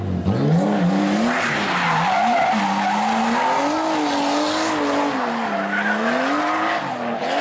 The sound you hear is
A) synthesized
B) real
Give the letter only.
B